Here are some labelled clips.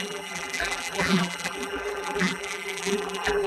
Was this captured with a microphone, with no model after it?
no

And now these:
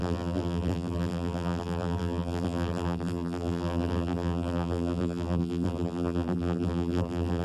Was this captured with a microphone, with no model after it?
no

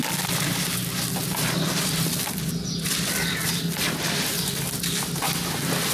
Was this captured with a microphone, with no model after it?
yes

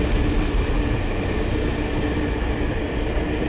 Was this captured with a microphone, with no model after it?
yes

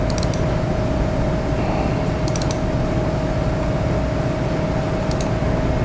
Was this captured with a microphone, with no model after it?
yes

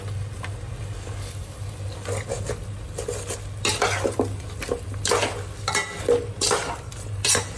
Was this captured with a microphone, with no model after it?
yes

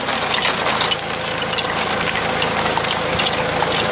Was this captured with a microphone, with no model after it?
yes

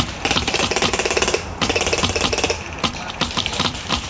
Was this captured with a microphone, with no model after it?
no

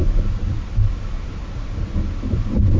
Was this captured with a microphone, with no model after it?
no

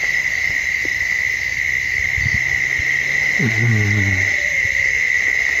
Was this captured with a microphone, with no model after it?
yes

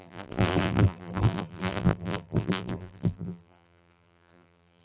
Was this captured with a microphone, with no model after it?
no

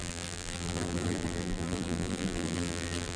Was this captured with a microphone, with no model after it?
no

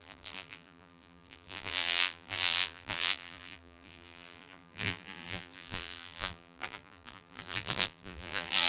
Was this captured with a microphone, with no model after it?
no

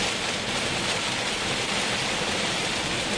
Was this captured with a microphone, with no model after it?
yes